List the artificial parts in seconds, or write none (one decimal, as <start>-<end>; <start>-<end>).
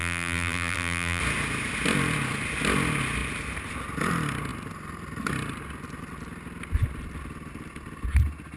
0.0-1.2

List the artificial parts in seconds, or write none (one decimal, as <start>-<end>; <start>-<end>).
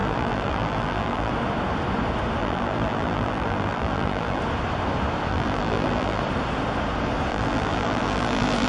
0.0-1.3; 2.4-4.4; 5.3-6.2; 7.3-8.7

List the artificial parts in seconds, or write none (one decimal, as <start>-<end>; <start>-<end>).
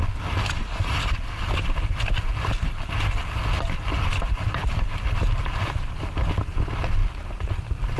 4.6-5.6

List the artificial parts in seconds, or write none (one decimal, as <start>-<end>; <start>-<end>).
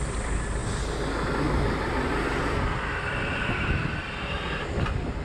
0.0-0.6; 3.1-5.2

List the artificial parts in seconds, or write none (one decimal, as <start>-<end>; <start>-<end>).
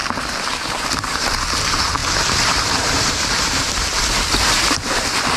0.8-2.0; 2.5-5.4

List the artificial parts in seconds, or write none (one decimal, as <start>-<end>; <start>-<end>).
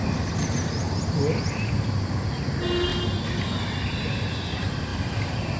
0.0-2.3; 4.9-5.6